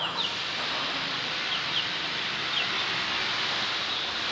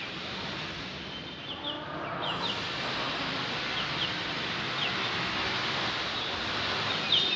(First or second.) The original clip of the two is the second